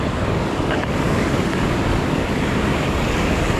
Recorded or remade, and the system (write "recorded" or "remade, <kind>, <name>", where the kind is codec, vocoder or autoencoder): remade, codec, DAC